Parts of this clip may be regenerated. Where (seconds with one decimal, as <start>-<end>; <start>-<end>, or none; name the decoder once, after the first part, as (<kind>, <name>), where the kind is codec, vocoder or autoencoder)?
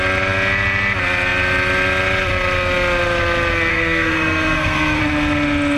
3.7-5.0 (codec, SNAC)